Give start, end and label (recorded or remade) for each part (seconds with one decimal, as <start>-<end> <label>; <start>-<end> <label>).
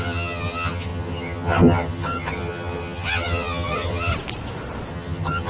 0.0-4.1 remade; 4.1-4.9 recorded; 4.9-5.5 remade